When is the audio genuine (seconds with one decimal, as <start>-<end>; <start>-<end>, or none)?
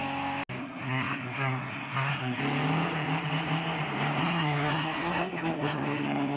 0.0-0.6; 2.4-4.2